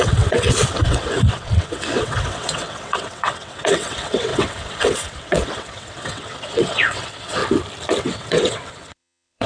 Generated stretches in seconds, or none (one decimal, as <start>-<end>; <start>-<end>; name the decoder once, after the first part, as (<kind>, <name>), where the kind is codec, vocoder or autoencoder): 0.0-7.4 (vocoder, WaveNeXt); 8.0-9.5